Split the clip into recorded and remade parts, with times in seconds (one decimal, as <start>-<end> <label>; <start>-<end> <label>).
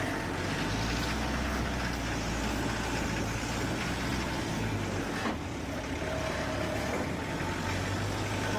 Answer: 0.0-4.1 recorded; 4.1-7.3 remade; 7.3-8.6 recorded